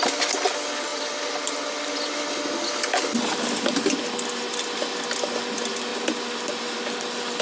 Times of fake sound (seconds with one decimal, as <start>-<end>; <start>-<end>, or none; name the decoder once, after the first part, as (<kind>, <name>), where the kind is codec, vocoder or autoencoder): none